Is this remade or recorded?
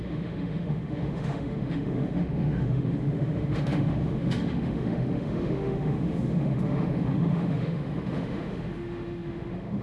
remade